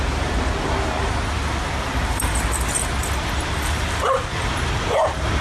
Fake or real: real